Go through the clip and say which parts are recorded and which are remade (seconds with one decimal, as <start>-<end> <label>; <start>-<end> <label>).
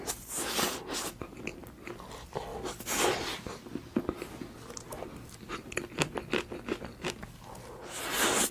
0.0-8.5 recorded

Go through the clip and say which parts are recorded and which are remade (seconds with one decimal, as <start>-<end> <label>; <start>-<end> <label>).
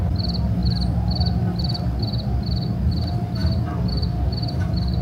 0.0-4.3 recorded; 4.3-5.0 remade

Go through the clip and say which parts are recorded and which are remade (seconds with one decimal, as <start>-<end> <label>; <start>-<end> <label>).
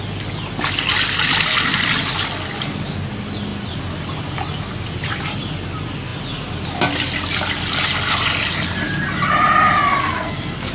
0.0-10.0 recorded; 10.0-10.7 remade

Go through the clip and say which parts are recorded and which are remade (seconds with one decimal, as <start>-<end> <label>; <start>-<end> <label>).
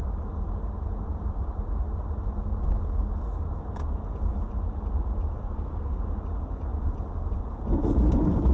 0.0-5.3 recorded; 5.3-6.0 remade; 6.0-8.5 recorded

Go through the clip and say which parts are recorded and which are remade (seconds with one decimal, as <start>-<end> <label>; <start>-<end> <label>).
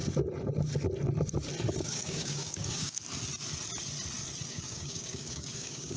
0.0-1.8 recorded; 1.8-3.0 remade; 3.0-4.5 recorded; 4.5-6.0 remade